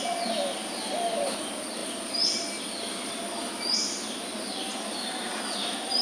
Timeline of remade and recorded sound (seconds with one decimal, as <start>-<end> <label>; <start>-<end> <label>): 0.0-6.0 recorded